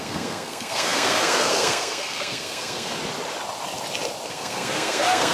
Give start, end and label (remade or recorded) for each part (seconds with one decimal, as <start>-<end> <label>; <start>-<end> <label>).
0.0-2.9 remade; 2.9-4.3 recorded; 4.3-5.3 remade